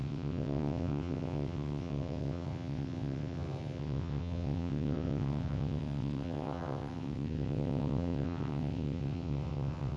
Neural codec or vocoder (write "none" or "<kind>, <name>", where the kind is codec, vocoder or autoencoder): vocoder, WaveNeXt